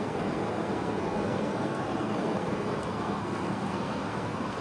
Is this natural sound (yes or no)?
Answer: no